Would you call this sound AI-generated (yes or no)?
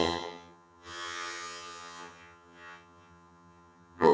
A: yes